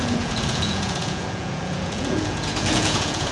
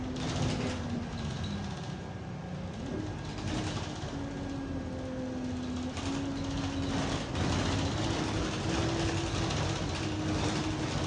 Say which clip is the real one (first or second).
second